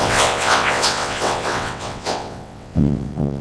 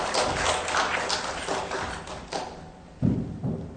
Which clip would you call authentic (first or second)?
second